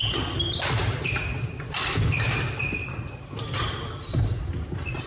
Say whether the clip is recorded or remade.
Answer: remade